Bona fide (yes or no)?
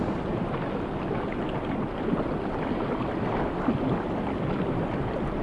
yes